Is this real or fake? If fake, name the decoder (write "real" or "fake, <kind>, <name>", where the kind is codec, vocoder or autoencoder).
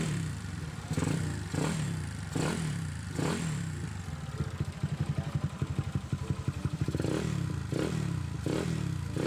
real